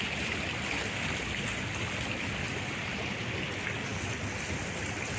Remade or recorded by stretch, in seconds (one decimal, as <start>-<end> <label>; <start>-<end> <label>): 0.0-5.2 recorded